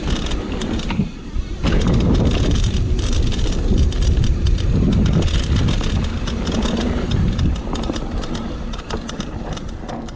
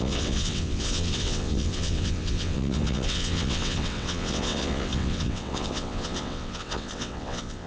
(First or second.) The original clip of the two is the first